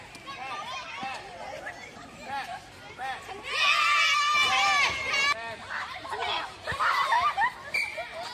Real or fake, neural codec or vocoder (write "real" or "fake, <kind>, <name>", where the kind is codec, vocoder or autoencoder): real